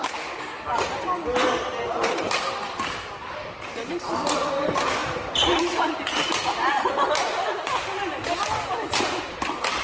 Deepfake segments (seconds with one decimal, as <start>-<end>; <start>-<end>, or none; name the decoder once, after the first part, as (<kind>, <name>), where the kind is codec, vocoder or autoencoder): none

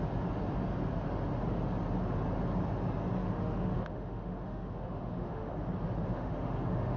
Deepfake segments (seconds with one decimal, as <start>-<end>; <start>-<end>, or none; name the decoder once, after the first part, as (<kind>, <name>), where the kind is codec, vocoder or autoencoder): 3.2-5.5 (autoencoder, DAC-VAE); 6.0-7.0

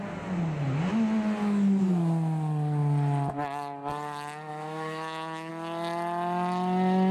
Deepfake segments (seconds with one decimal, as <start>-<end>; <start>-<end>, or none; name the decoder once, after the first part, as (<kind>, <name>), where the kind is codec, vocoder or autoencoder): 4.5-5.5 (autoencoder, DAC-VAE)

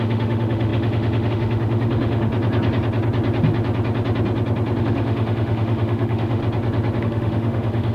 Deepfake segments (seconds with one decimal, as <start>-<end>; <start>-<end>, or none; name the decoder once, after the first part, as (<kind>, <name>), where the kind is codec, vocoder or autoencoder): 0.0-2.3 (autoencoder, DAC-VAE); 4.8-6.4; 7.0-7.9

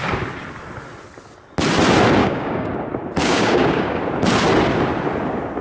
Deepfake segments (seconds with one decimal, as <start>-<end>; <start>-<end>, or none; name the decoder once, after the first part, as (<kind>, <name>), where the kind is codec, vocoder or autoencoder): 2.2-2.7 (codec, DAC); 3.2-4.0